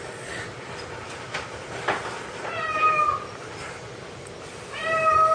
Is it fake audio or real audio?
real